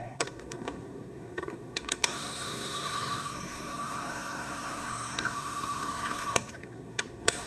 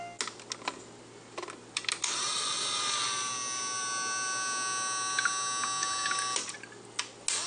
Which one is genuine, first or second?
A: second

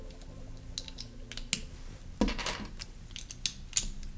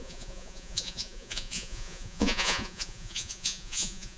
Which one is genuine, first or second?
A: first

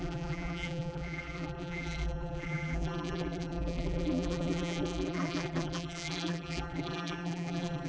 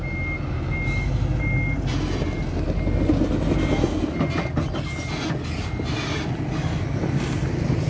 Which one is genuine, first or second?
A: second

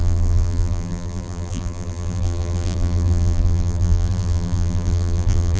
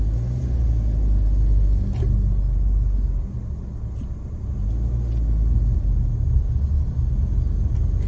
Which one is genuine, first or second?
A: second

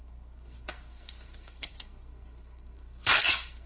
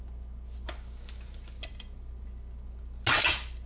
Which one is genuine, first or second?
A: second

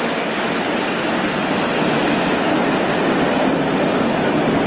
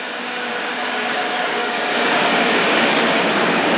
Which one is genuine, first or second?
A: first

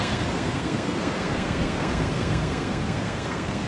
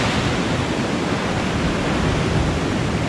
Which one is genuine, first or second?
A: second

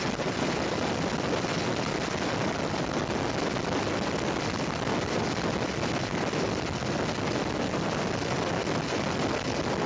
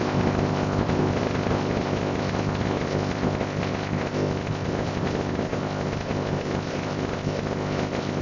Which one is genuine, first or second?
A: first